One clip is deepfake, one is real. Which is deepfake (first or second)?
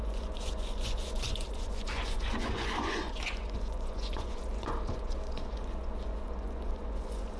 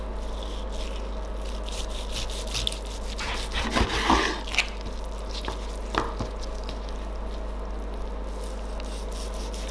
first